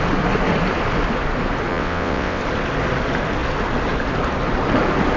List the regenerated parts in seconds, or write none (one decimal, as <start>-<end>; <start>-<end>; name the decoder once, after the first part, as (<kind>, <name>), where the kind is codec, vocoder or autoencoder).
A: 1.7-2.4 (vocoder, WaveNeXt)

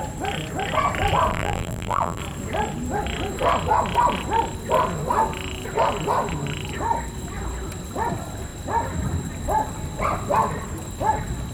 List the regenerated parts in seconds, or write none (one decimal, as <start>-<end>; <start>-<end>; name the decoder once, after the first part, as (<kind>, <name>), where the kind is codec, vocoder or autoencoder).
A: 1.3-2.2 (vocoder, BigVGAN v2)

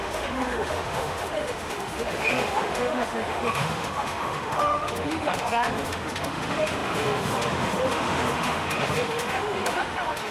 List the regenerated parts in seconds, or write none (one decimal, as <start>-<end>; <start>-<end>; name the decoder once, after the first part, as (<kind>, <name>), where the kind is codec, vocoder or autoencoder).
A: 0.0-10.3 (autoencoder, DAC-VAE)

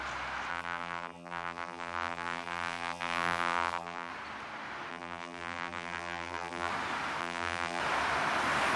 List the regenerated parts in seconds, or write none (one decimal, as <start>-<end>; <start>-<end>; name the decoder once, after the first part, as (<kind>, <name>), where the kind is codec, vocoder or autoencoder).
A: 0.5-4.1 (vocoder, BigVGAN v2); 4.9-6.7; 7.2-7.8

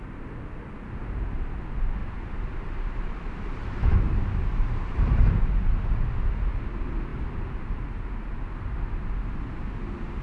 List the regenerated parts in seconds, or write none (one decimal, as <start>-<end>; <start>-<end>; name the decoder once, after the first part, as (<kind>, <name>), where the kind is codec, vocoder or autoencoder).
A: 2.0-5.4 (vocoder, BigVGAN v2)

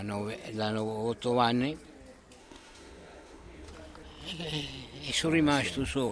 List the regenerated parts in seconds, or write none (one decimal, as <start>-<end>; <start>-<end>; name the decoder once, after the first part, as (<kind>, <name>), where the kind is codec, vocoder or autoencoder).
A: 2.4-3.7 (autoencoder, DAC-VAE)

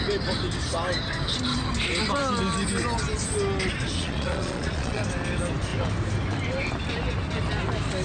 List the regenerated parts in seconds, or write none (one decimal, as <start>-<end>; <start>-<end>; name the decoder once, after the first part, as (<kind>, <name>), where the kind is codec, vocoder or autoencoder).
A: 4.0-5.0 (vocoder, Vocos)

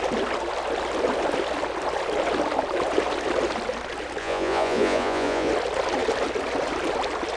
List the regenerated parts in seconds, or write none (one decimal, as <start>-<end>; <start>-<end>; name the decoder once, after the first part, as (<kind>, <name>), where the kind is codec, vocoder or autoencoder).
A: 4.2-5.5 (vocoder, Vocos)